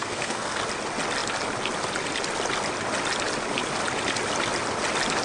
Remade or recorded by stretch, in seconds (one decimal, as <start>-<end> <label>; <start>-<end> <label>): 0.0-0.6 remade; 0.6-5.2 recorded